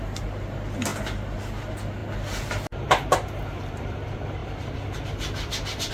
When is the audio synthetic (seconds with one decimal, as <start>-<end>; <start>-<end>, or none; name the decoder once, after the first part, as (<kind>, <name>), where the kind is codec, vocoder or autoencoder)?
4.4-5.9 (vocoder, BigVGAN v2)